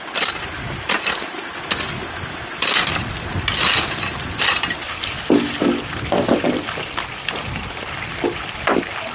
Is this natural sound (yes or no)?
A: yes